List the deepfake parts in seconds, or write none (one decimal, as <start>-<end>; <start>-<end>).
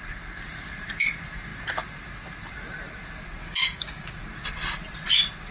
3.4-4.1